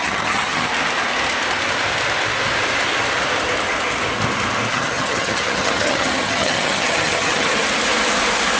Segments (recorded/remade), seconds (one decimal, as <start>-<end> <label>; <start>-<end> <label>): 0.0-0.7 remade; 0.7-4.7 recorded; 4.7-7.6 remade; 7.6-8.6 recorded